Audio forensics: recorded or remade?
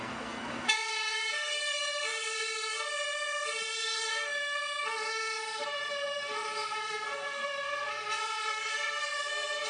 remade